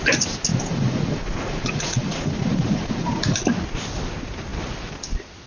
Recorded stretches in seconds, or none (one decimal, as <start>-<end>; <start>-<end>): 0.0-0.5; 3.4-5.5